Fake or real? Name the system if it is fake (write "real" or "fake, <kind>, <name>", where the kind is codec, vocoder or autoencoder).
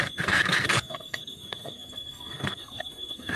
fake, codec, SNAC